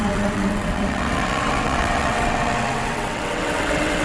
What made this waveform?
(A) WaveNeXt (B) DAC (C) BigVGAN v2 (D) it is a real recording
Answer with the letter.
A